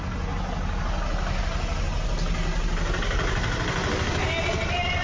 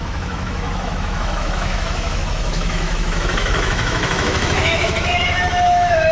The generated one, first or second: second